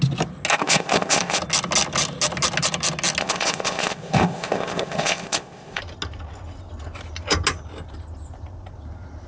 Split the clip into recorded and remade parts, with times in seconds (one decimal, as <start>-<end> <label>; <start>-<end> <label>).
0.0-0.5 recorded; 0.5-1.4 remade; 1.4-3.2 recorded; 3.2-5.8 remade; 5.8-9.3 recorded

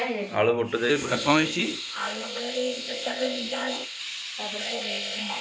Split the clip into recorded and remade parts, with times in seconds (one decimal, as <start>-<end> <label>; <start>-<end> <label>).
0.0-0.9 recorded; 0.9-4.0 remade; 4.0-4.6 recorded; 4.6-5.4 remade

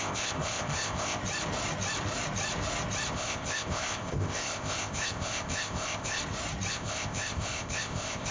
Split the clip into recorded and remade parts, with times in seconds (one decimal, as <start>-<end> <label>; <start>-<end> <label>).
0.0-1.2 remade; 1.2-3.1 recorded; 3.1-6.2 remade; 6.2-6.7 recorded; 6.7-8.3 remade

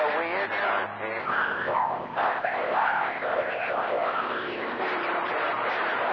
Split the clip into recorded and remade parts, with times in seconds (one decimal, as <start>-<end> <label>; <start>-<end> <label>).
0.0-1.2 recorded; 1.2-4.8 remade; 4.8-6.1 recorded

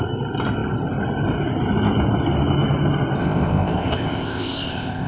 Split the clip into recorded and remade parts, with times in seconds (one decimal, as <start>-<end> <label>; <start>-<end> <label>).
0.0-3.2 recorded; 3.2-5.1 remade

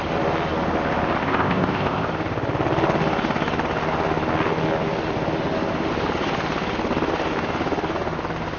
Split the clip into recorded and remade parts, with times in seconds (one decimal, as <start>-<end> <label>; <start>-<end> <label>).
0.0-1.2 recorded; 1.2-2.1 remade; 2.1-8.6 recorded

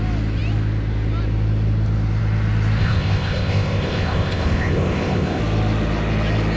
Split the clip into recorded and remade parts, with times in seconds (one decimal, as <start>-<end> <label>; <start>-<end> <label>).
0.0-2.8 recorded; 2.8-5.4 remade; 5.4-6.6 recorded